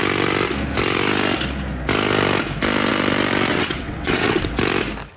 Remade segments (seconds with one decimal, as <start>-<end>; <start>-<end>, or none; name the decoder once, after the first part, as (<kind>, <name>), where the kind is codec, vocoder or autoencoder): 3.5-4.5 (vocoder, WaveNeXt)